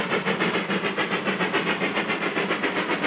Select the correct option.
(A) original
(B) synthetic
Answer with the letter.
A